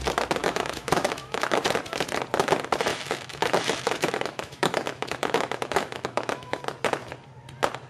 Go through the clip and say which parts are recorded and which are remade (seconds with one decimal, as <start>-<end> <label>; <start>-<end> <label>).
0.0-0.4 recorded; 0.4-1.6 remade; 1.6-2.9 recorded; 2.9-6.6 remade; 6.6-7.9 recorded